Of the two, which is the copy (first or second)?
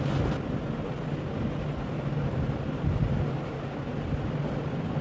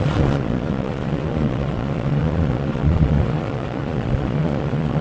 second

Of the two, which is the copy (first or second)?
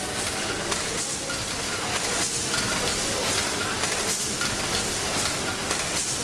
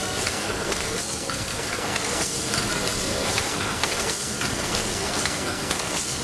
second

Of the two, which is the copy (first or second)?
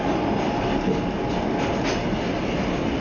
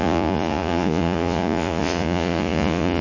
second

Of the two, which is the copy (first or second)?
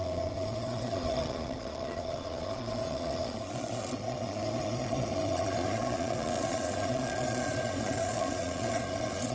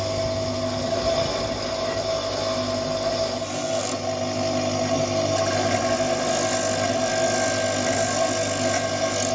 first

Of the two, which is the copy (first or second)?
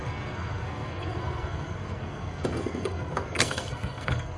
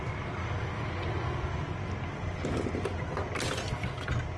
first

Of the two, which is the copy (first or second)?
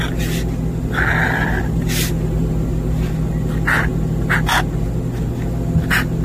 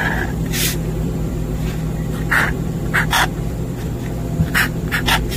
second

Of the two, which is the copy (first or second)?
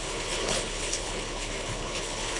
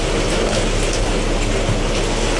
first